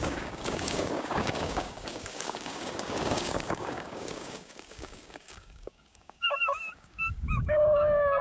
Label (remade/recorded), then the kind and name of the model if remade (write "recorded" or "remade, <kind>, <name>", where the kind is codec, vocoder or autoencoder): remade, codec, DAC